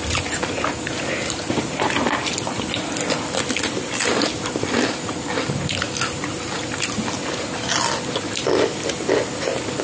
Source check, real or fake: real